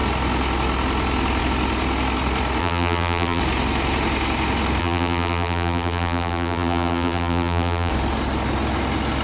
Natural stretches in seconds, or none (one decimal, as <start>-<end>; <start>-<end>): 0.0-2.6; 3.4-4.8; 7.9-9.2